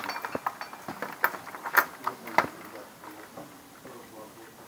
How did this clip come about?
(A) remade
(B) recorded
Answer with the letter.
B